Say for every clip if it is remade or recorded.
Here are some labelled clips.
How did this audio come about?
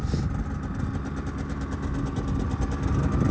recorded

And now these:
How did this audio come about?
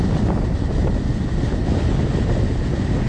recorded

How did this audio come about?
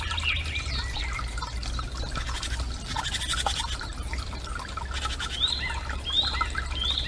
recorded